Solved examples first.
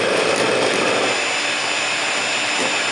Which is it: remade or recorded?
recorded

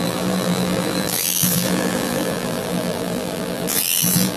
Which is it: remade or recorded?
remade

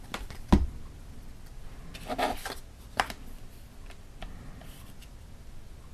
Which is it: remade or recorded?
recorded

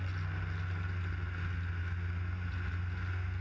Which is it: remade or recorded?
recorded